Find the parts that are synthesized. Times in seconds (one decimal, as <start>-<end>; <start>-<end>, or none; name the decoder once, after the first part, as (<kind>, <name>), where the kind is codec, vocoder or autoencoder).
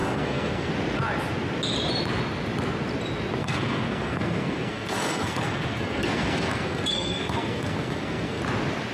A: 0.0-0.7 (codec, SNAC); 3.4-8.4